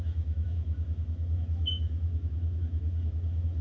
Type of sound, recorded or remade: remade